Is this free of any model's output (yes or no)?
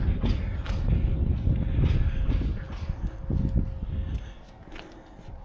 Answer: yes